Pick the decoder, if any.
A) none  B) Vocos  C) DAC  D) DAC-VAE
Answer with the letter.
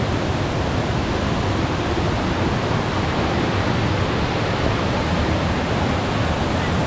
A